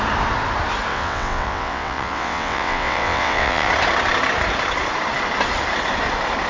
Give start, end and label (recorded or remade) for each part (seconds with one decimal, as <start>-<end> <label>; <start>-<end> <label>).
0.0-0.9 recorded; 0.9-3.7 remade; 3.7-6.5 recorded